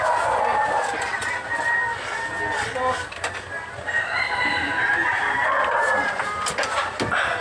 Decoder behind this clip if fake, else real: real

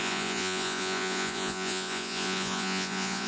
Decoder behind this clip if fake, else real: fake, vocoder, Vocos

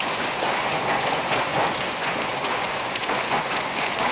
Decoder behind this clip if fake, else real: fake, vocoder, Vocos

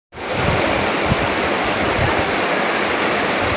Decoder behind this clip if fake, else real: real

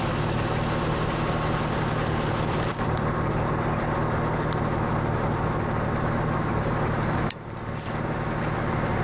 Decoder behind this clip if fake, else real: real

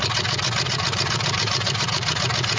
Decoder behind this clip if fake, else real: fake, vocoder, Vocos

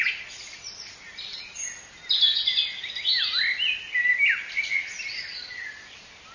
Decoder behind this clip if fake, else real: real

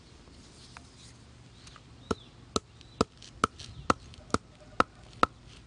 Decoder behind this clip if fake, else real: real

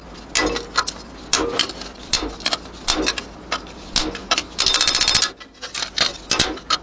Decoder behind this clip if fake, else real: real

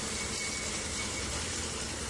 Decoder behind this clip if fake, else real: real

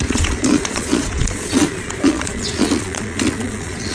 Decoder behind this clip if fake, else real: fake, vocoder, Vocos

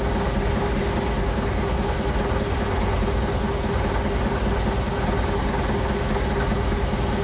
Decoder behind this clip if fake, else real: real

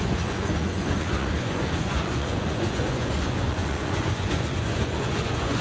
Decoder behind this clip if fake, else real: fake, vocoder, Vocos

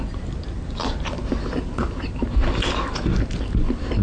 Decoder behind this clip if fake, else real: real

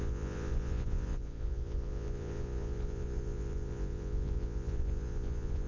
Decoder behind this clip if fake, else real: fake, vocoder, Vocos